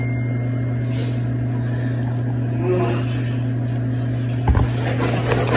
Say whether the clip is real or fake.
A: real